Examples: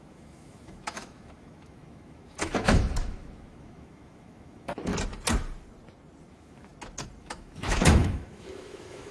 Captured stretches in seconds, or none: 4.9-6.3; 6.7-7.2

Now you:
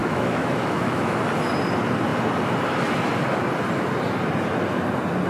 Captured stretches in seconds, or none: 1.2-5.3